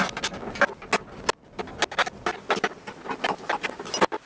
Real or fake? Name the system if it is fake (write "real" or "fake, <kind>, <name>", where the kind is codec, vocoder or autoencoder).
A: real